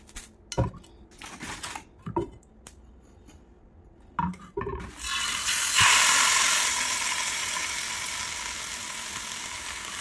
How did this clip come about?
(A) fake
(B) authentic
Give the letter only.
B